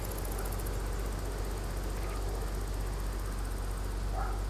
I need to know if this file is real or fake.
real